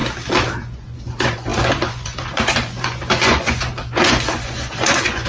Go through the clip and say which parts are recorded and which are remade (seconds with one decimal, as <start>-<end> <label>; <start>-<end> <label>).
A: 0.0-0.6 recorded; 0.6-5.3 remade